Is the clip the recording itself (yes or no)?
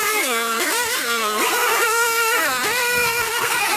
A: no